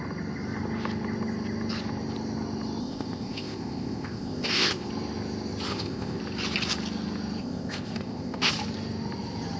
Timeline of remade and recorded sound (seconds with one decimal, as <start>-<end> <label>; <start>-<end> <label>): 0.0-2.8 recorded; 2.8-4.9 remade; 4.9-5.7 recorded; 5.7-6.2 remade; 6.2-7.4 recorded; 7.4-8.5 remade; 8.5-9.6 recorded

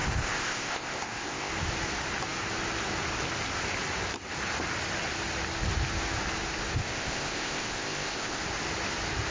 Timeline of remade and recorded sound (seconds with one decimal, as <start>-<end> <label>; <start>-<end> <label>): 0.0-1.5 remade; 1.5-6.8 recorded; 6.8-8.4 remade; 8.4-9.3 recorded

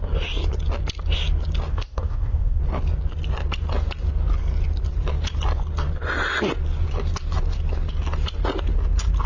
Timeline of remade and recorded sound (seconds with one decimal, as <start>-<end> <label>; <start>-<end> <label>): 0.0-1.7 recorded; 1.7-2.6 remade; 2.6-9.3 recorded

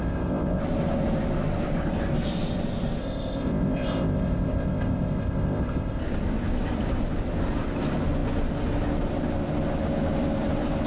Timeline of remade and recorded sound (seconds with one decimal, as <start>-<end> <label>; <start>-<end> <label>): 0.0-0.6 remade; 0.6-3.0 recorded; 3.0-6.0 remade; 6.0-10.9 recorded

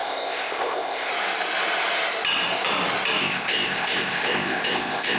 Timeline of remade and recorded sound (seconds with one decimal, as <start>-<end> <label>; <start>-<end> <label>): 0.0-1.1 remade; 1.1-3.2 recorded; 3.2-5.2 remade